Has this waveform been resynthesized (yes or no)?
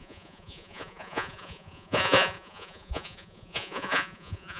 yes